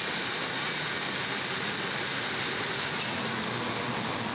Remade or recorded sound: recorded